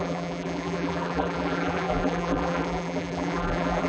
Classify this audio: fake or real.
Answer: fake